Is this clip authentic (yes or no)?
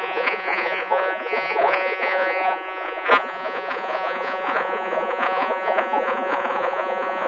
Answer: no